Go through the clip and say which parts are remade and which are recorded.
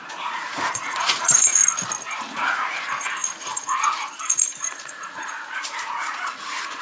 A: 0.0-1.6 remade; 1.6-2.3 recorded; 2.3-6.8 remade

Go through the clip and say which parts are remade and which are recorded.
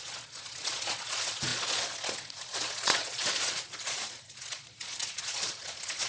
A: 0.0-6.1 remade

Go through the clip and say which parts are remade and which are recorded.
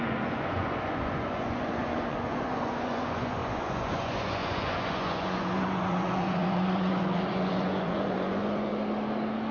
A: 0.0-8.7 remade; 8.7-9.5 recorded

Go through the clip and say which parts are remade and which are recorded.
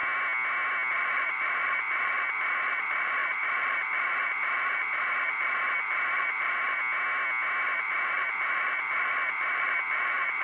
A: 0.0-0.9 recorded; 0.9-6.8 remade; 6.8-7.6 recorded; 7.6-10.4 remade